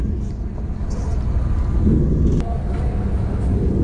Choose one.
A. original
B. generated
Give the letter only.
A